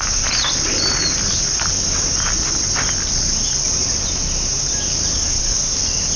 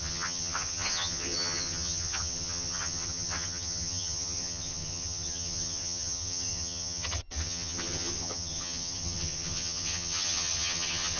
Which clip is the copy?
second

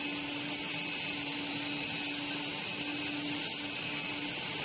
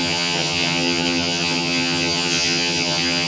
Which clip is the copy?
second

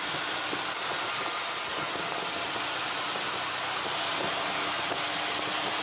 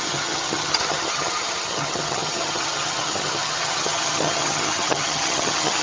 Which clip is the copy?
second